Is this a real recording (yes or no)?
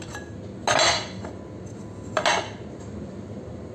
yes